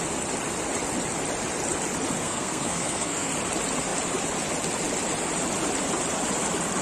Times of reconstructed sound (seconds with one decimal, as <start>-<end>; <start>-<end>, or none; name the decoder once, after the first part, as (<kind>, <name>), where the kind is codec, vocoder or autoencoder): 2.2-3.3 (codec, SNAC)